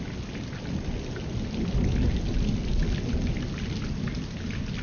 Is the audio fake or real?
real